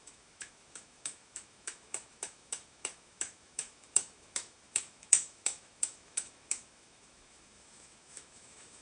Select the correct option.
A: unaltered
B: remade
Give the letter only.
B